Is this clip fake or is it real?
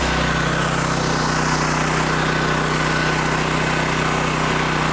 real